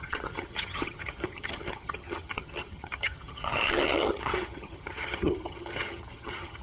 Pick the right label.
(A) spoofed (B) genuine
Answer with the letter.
A